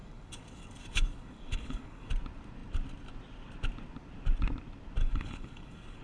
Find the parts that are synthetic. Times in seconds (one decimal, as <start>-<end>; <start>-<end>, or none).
0.0-2.1; 5.0-6.0